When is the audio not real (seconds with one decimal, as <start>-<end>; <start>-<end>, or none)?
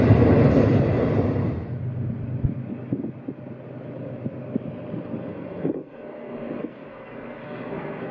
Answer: 5.3-8.1